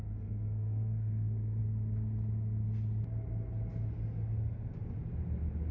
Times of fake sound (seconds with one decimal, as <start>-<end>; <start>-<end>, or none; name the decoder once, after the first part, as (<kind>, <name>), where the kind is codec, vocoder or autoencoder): 0.0-1.6 (codec, SNAC); 4.3-4.8